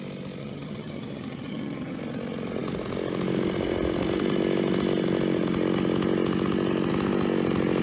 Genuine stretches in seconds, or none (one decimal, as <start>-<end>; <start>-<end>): 0.0-0.4; 2.0-7.8